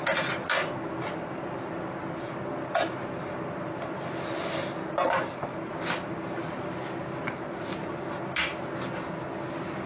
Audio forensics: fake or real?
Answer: real